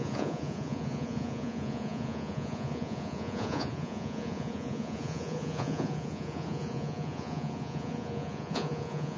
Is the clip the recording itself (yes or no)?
no